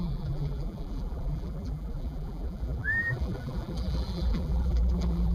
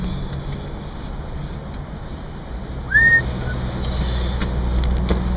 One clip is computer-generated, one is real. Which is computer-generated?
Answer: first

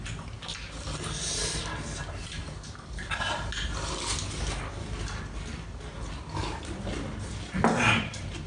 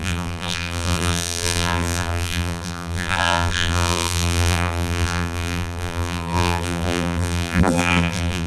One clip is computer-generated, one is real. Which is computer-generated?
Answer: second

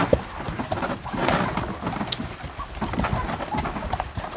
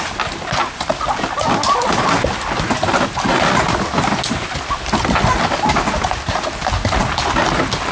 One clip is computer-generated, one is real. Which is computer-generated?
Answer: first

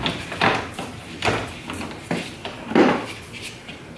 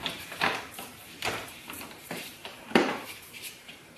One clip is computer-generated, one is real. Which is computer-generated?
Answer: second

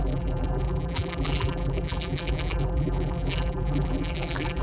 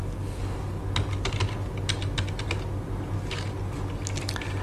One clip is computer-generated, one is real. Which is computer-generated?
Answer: first